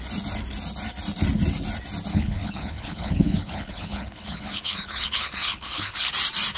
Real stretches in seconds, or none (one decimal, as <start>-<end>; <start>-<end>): 0.0-2.1; 6.1-6.6